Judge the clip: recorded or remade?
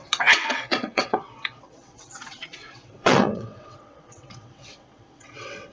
remade